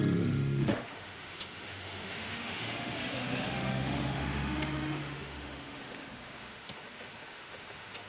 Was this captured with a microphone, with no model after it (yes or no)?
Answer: no